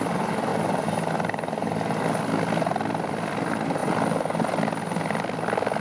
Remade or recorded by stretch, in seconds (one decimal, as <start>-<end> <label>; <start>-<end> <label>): 0.0-5.8 recorded